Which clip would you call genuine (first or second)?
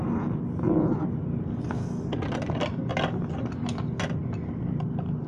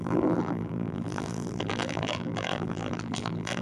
first